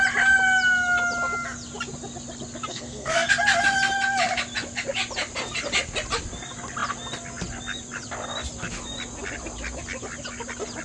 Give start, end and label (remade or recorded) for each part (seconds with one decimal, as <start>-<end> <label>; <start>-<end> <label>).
0.0-2.7 recorded; 2.7-3.3 remade; 3.3-10.8 recorded